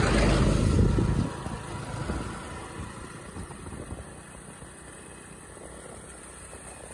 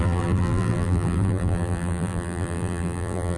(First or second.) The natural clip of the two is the first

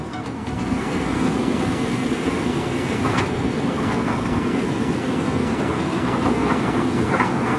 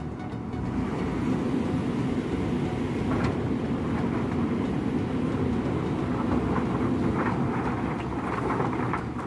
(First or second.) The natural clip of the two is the second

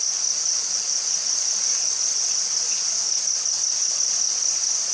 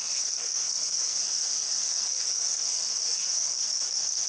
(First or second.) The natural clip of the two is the first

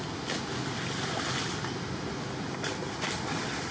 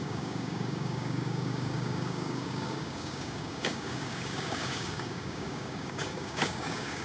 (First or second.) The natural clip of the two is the first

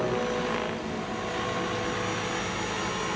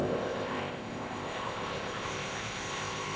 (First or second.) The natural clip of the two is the first